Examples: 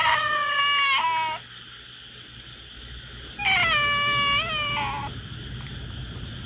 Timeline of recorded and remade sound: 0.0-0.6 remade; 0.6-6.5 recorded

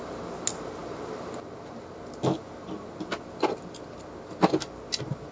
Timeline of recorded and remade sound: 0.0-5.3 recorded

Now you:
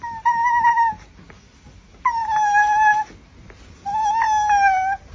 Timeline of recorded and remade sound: 0.0-5.1 recorded